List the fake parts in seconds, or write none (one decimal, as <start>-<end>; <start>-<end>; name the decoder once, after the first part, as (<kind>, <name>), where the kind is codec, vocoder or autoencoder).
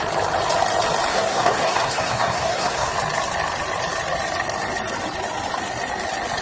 1.1-2.9 (codec, SNAC)